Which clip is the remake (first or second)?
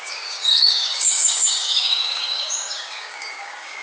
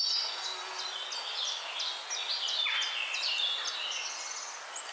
first